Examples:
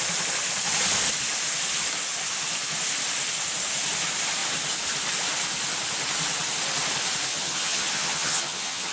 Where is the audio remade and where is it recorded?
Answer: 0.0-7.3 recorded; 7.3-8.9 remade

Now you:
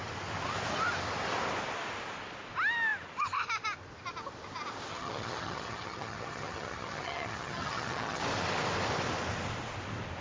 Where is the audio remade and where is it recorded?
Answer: 0.0-4.9 recorded; 4.9-8.2 remade; 8.2-10.2 recorded

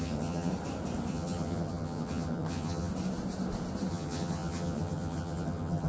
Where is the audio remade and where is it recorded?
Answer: 0.0-0.5 remade; 0.5-1.1 recorded; 1.1-2.9 remade; 2.9-3.9 recorded; 3.9-5.9 remade

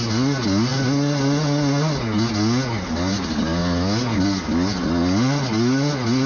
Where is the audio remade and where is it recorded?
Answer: 0.0-6.3 recorded

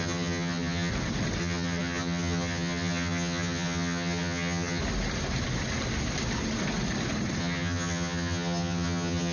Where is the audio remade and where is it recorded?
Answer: 0.0-0.9 remade; 0.9-1.4 recorded; 1.4-4.8 remade; 4.8-7.4 recorded; 7.4-9.3 remade